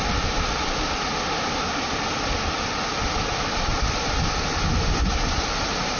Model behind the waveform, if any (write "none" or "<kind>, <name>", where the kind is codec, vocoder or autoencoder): none